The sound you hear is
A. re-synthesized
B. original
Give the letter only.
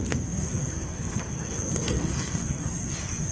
A